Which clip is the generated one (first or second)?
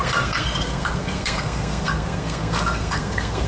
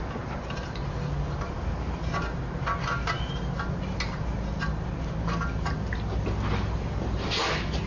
first